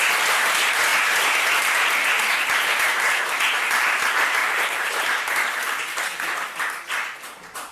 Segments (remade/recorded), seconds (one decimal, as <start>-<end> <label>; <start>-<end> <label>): 0.0-4.4 recorded; 4.4-5.2 remade; 5.2-7.7 recorded